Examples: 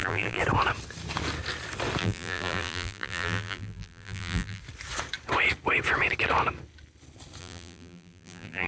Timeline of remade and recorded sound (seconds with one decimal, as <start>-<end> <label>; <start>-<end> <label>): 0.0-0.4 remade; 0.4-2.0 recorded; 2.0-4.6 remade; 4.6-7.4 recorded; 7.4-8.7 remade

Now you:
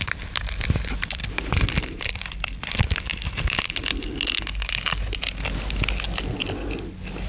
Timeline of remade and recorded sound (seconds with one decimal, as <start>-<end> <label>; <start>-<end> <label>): 0.0-1.2 remade; 1.2-2.0 recorded; 2.0-3.1 remade; 3.1-7.3 recorded

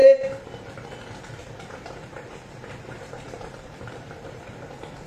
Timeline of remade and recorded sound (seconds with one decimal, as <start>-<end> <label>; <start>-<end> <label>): 0.0-1.4 recorded; 1.4-4.4 remade; 4.4-5.1 recorded

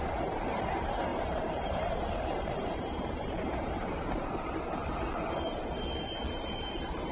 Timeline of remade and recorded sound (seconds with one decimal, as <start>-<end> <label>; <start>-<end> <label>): 0.0-4.8 remade; 4.8-6.4 recorded; 6.4-7.1 remade